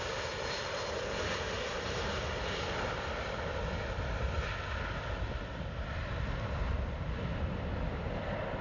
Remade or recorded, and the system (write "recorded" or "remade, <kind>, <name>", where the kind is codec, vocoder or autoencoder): recorded